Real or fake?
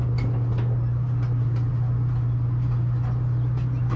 real